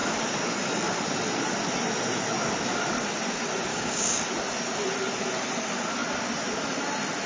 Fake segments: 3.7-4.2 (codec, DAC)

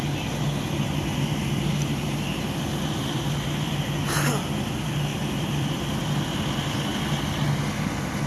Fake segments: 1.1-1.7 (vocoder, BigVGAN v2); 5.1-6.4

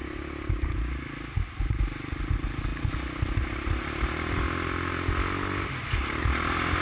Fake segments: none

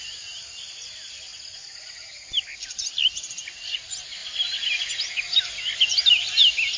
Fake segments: none

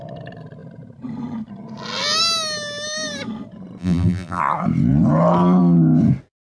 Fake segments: 3.8-4.4 (vocoder, BigVGAN v2)

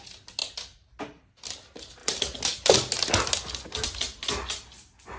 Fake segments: none

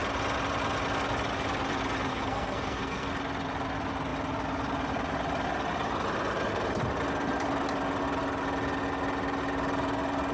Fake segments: 2.1-3.1 (codec, SNAC)

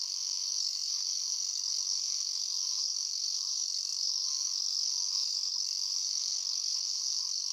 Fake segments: 0.0-7.5 (codec, SNAC)